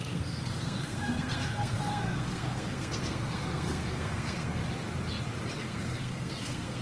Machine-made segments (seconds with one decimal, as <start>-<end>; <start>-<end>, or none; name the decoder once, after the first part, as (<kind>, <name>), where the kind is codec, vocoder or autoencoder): 0.0-4.6 (codec, SNAC); 5.6-6.8